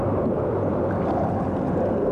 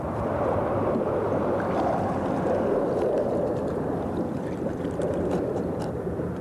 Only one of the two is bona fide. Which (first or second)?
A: first